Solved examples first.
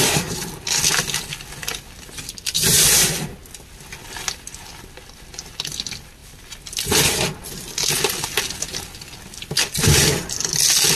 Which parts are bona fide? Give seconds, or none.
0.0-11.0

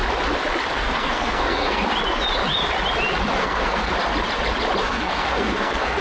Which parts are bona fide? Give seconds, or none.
0.0-0.7; 1.8-3.4; 3.9-4.8

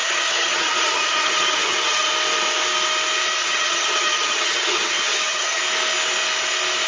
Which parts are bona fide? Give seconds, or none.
2.1-3.4; 5.6-6.9

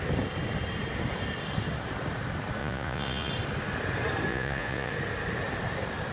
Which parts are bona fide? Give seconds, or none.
0.0-2.6; 3.3-4.3; 4.9-6.1